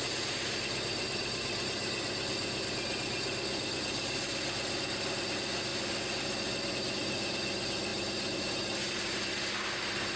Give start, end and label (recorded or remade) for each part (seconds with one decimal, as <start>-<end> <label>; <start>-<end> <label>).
0.0-10.2 recorded